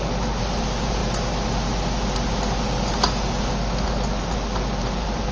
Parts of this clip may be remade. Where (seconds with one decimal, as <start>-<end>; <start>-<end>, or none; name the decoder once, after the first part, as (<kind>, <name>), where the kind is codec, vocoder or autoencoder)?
0.0-1.0 (vocoder, BigVGAN v2); 4.2-5.3